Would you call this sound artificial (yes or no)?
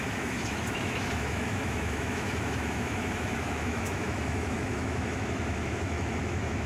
yes